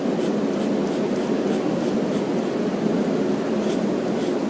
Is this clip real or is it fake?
real